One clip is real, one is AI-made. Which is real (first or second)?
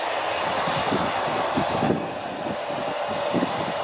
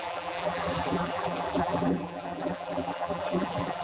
first